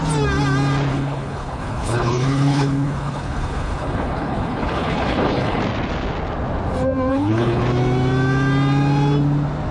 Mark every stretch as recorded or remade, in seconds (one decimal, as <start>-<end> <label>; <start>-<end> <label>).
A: 0.0-0.9 recorded; 0.9-5.6 remade; 5.6-7.1 recorded; 7.1-7.6 remade; 7.6-9.7 recorded